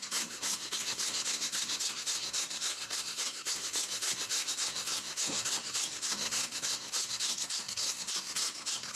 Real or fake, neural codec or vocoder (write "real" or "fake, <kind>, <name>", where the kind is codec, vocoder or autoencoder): fake, codec, SNAC